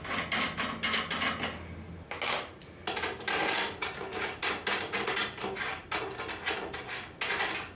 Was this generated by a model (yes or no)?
no